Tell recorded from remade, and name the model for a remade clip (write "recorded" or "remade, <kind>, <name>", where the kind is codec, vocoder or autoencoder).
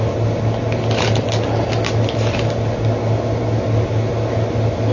recorded